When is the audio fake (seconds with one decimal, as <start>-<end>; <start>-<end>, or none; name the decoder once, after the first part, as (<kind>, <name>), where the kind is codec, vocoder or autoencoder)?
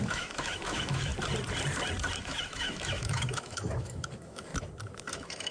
0.0-1.1 (autoencoder, DAC-VAE); 2.2-4.5; 5.1-5.5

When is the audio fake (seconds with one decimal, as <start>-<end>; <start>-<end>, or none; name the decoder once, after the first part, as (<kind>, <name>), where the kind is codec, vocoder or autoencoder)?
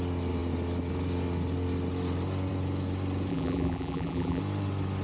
3.3-4.4 (vocoder, BigVGAN v2)